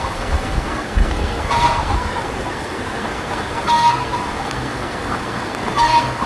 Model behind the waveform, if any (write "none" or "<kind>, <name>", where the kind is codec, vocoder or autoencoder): codec, SNAC